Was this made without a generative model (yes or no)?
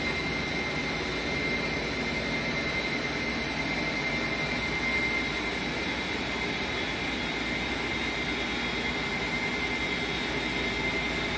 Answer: yes